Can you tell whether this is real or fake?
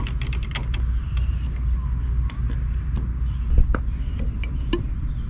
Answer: real